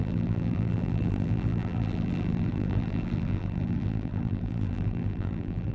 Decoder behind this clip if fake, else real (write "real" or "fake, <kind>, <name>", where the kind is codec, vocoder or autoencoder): fake, vocoder, BigVGAN v2